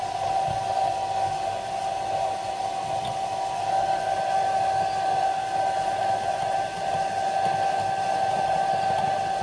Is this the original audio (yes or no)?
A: yes